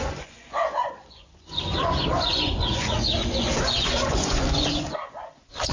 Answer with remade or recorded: remade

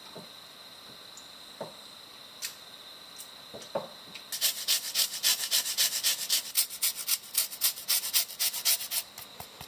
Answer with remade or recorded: recorded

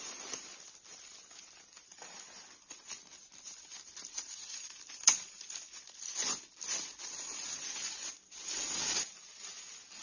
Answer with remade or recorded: recorded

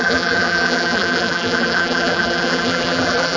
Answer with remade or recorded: remade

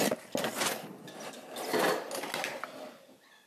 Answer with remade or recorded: recorded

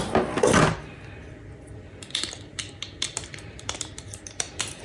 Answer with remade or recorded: remade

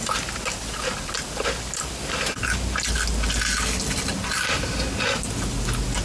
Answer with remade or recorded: recorded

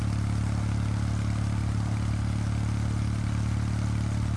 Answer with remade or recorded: recorded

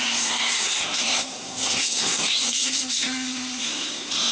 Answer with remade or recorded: remade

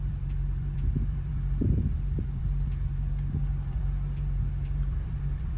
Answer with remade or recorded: remade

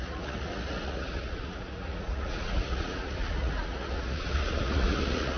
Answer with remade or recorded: remade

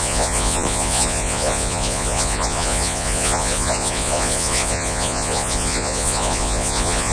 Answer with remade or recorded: remade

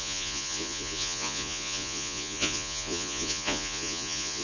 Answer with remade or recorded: remade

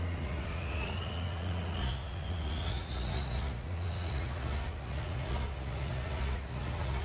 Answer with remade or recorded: remade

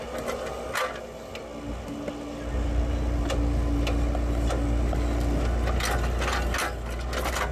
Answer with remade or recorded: recorded